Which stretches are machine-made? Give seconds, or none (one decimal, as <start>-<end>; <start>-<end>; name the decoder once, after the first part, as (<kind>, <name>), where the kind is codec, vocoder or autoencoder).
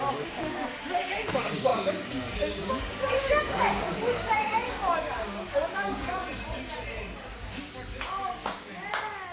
0.0-6.2 (codec, DAC); 7.3-9.3